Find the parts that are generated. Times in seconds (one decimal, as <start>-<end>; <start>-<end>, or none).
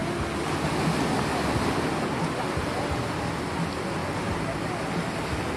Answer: none